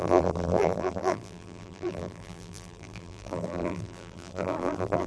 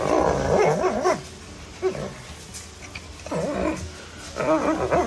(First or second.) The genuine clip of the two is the second